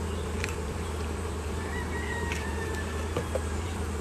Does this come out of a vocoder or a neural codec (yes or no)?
yes